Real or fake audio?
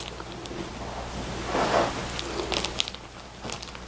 real